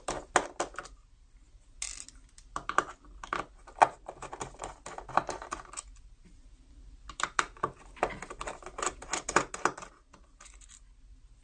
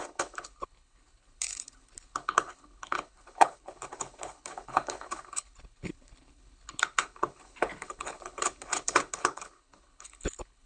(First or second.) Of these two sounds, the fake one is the second